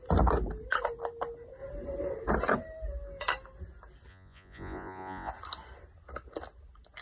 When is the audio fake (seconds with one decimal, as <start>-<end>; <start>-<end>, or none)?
4.1-5.3